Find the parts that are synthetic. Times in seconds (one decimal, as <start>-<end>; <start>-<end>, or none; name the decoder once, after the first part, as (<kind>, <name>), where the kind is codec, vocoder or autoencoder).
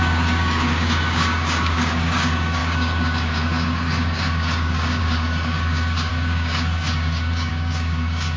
0.0-8.4 (codec, DAC)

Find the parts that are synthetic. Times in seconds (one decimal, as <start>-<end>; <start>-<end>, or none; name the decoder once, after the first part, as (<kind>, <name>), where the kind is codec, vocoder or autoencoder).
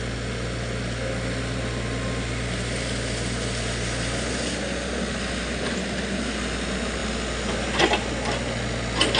none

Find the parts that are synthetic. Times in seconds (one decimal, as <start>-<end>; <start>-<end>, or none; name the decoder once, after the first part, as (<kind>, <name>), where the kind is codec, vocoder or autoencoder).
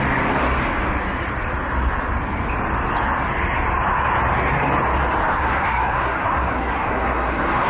5.4-7.7 (codec, SNAC)